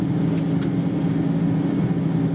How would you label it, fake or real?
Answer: real